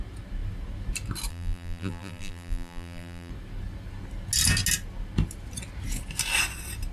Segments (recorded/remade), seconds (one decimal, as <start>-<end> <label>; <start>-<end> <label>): 0.0-1.3 recorded; 1.3-3.3 remade; 3.3-6.9 recorded